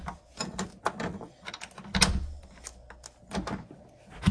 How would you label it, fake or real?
real